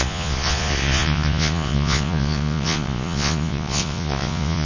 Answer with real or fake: fake